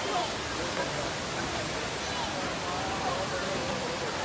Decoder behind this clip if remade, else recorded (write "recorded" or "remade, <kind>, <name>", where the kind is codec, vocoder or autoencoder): recorded